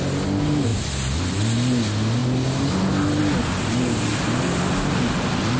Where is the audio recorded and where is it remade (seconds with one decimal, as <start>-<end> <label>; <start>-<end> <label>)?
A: 0.0-5.6 recorded